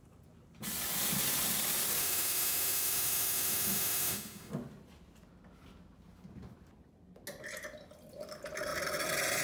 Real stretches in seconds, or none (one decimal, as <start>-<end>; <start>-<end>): 0.0-2.0; 4.5-9.4